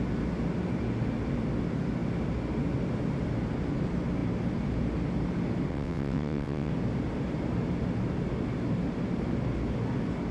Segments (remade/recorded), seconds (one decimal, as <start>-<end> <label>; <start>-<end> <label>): 0.0-5.7 recorded; 5.7-6.7 remade; 6.7-10.3 recorded